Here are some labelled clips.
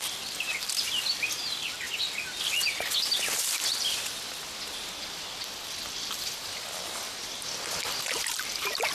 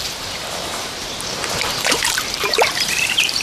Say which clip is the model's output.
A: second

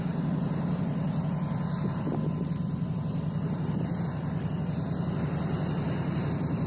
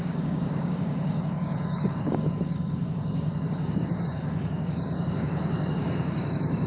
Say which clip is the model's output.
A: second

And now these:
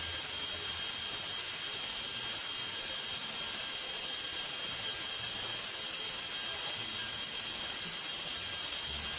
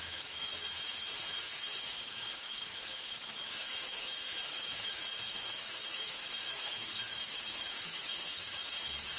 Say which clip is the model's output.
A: second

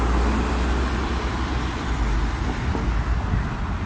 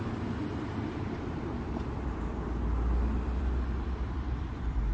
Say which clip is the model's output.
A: second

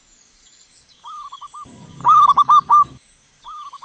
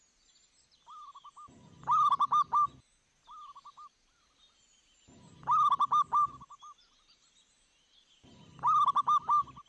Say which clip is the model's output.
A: first